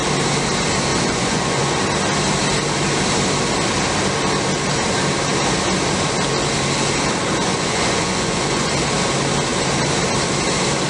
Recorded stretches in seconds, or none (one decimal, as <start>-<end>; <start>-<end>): 0.0-0.9; 1.8-7.4; 8.7-10.9

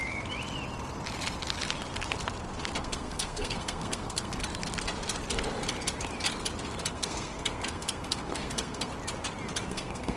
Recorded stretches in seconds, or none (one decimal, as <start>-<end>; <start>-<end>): 0.0-2.8; 4.4-6.9; 8.9-9.7

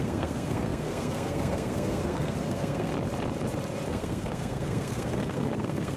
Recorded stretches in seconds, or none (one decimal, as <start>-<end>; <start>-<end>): 2.9-3.9

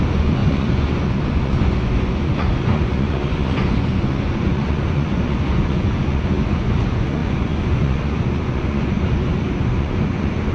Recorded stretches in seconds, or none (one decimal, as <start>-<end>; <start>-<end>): none

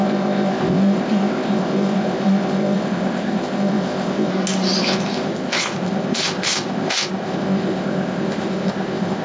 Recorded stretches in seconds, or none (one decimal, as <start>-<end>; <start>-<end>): 4.3-4.8

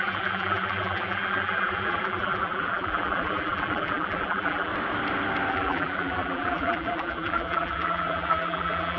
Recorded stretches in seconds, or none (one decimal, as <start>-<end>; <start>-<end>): 4.7-5.5

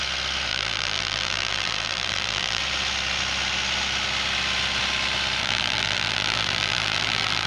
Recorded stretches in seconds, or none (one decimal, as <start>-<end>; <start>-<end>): 0.0-0.5; 2.6-5.4

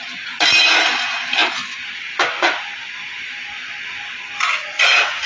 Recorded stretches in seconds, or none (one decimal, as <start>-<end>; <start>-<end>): 0.0-5.3